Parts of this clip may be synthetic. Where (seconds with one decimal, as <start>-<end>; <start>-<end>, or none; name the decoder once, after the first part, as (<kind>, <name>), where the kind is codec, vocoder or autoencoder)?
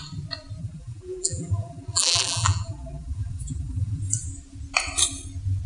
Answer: 0.6-4.0 (vocoder, BigVGAN v2)